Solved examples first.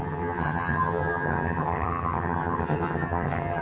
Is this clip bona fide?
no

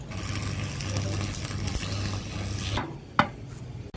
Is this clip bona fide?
yes